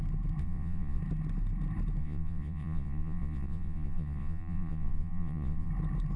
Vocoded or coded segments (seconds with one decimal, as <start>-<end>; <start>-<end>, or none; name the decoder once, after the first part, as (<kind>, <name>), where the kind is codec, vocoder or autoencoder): 0.4-1.0 (vocoder, Vocos); 2.0-5.7